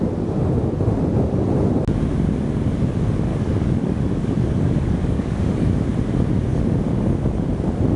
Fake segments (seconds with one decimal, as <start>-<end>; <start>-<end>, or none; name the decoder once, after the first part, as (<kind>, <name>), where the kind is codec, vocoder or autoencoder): 3.3-5.7 (codec, DAC); 6.5-7.5